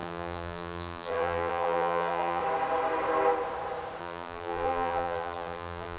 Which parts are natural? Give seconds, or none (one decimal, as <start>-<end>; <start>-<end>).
2.4-4.0